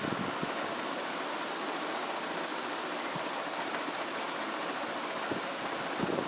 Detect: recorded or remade recorded